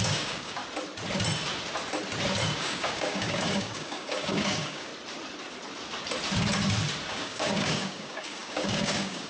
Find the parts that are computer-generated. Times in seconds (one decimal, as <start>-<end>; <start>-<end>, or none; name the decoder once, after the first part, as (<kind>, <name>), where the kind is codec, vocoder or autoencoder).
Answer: 0.0-0.6 (codec, DAC); 2.6-4.9; 7.1-9.3